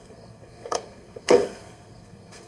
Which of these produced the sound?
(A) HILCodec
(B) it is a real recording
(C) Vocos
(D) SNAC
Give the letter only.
D